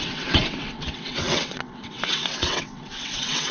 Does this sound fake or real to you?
fake